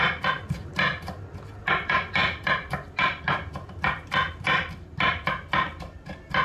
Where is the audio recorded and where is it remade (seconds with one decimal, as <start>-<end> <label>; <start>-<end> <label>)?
0.0-6.4 recorded